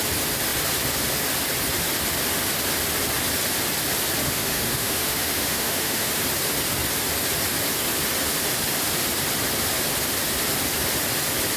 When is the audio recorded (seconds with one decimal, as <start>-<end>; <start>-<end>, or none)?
0.0-4.2; 6.1-11.6